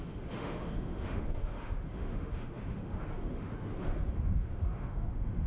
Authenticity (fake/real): fake